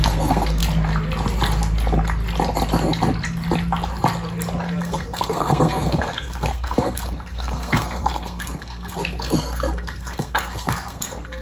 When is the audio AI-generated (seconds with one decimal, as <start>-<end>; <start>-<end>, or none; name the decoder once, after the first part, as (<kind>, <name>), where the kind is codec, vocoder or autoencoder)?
0.0-0.6 (codec, SNAC); 4.8-11.4